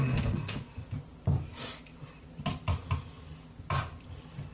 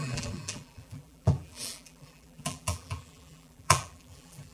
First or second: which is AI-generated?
second